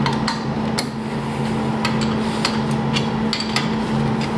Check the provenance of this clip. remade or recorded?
recorded